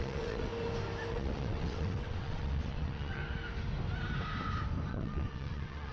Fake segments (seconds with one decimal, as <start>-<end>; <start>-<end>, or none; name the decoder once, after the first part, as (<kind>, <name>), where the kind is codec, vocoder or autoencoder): 0.0-0.5 (vocoder, WaveNeXt); 1.1-3.2; 4.9-5.9